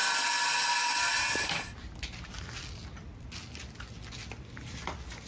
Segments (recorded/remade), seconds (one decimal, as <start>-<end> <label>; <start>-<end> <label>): 0.0-5.3 recorded